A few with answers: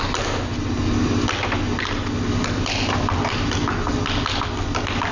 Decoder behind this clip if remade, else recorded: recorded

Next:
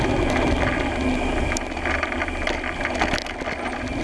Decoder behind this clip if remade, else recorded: recorded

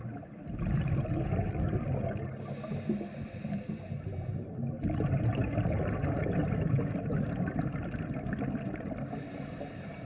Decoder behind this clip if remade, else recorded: recorded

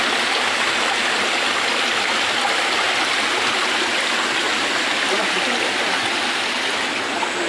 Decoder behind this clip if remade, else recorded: recorded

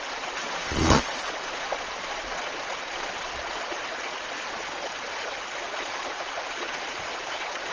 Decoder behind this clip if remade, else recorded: remade, vocoder, Vocos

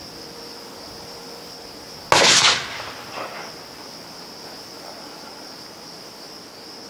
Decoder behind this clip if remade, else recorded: recorded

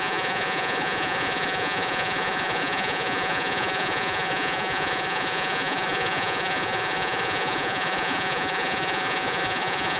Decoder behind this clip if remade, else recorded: remade, vocoder, Vocos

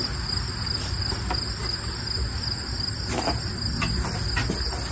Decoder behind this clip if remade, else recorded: recorded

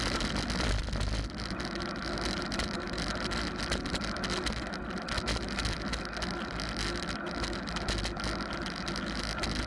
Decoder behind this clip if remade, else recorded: recorded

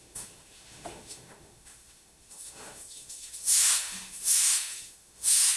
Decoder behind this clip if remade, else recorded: remade, autoencoder, DAC-VAE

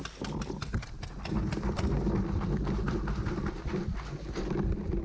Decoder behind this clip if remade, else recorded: recorded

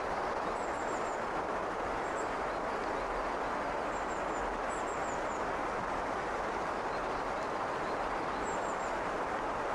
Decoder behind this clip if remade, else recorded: recorded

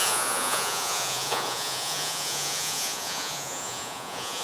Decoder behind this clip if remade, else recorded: remade, vocoder, Vocos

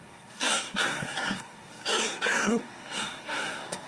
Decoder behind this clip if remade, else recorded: remade, codec, SNAC